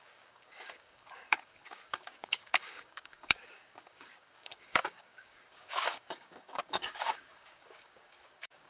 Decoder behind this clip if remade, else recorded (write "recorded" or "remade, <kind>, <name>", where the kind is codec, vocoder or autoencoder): remade, codec, DAC